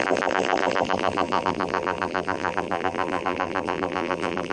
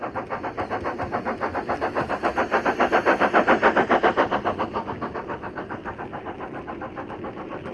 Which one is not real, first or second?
first